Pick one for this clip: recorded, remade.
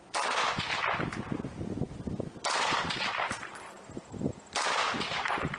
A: recorded